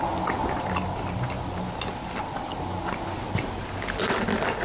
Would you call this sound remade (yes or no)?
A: no